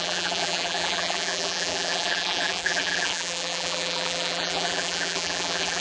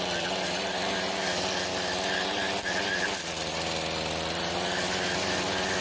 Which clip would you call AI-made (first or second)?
first